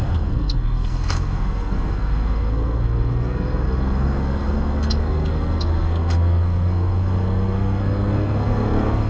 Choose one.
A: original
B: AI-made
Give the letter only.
B